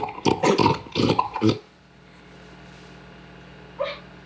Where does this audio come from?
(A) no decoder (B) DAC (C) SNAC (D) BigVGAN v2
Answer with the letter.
A